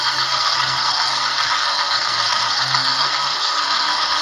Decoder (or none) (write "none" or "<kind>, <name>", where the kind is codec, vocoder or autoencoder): codec, SNAC